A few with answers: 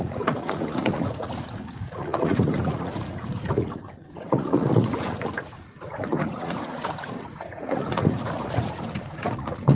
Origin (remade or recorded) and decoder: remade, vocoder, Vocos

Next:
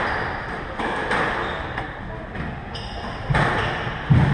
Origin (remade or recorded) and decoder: recorded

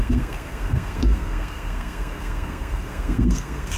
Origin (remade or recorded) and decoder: remade, codec, SNAC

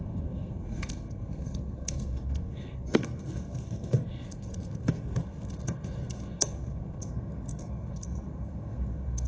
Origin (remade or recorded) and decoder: remade, codec, SNAC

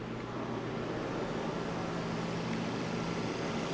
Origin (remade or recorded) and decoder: recorded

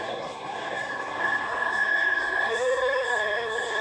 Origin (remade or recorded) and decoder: remade, codec, SNAC